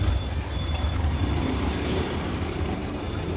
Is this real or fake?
fake